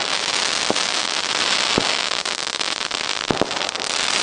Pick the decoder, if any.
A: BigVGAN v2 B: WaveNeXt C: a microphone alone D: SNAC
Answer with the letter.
C